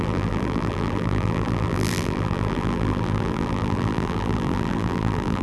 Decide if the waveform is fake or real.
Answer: fake